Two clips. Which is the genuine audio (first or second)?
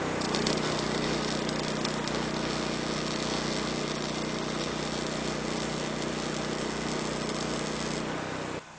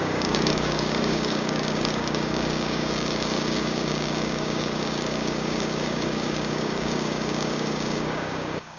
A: first